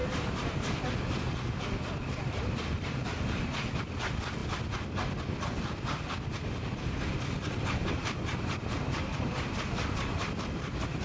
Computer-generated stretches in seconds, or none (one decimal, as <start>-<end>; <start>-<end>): 2.2-3.4